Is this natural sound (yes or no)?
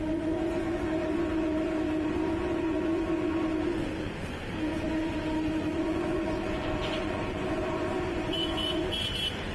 no